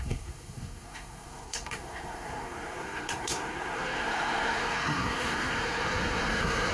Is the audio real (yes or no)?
no